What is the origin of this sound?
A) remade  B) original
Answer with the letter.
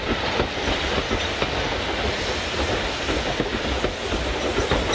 B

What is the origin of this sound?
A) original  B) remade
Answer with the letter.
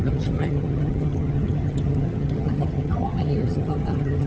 B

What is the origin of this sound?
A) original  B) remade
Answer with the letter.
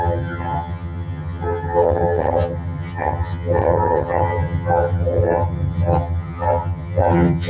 B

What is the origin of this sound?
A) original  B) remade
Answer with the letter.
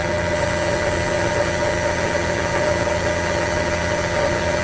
B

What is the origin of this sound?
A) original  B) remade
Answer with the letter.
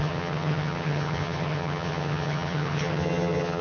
B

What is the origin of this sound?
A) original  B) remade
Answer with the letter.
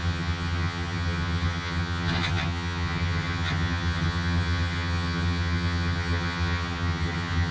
B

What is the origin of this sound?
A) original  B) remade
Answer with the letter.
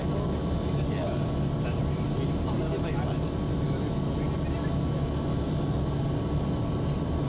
A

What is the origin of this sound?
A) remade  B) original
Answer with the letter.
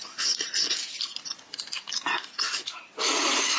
B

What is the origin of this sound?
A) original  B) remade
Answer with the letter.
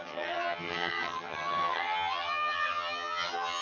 B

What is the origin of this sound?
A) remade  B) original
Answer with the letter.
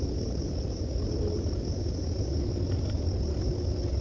B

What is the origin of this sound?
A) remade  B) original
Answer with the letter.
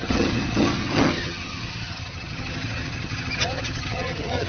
A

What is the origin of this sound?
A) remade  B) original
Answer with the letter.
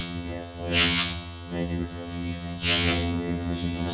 A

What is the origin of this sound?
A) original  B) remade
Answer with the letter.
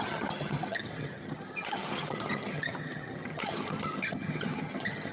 B